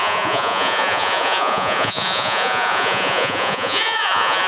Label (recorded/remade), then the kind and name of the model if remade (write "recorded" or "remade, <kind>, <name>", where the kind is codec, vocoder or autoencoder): remade, vocoder, Vocos